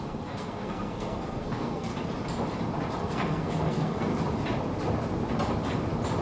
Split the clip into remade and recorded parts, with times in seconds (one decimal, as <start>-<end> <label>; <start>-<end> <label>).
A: 0.0-1.9 remade; 1.9-3.0 recorded; 3.0-4.1 remade; 4.1-6.2 recorded